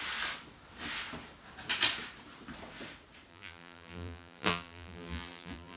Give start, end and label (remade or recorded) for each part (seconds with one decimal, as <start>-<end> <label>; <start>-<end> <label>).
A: 0.0-3.3 recorded; 3.3-5.8 remade